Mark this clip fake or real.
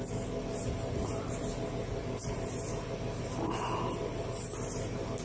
real